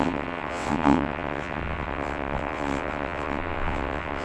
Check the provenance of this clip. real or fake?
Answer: fake